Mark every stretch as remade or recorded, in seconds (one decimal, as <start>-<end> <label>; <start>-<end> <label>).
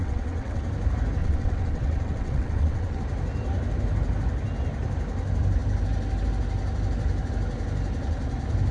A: 0.0-0.6 remade; 0.6-1.2 recorded; 1.2-3.0 remade; 3.0-8.7 recorded